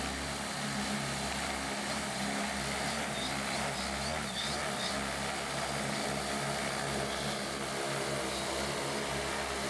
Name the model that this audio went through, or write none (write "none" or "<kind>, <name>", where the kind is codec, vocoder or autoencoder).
none